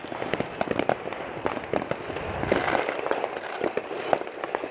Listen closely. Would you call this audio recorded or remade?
recorded